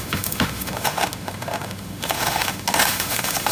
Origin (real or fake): fake